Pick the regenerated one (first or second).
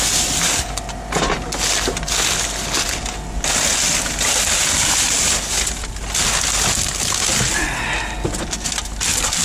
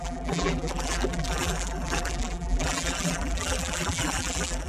second